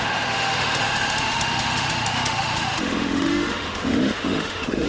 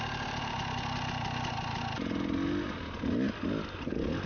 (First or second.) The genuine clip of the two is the second